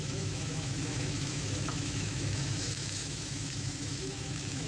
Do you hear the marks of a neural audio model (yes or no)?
yes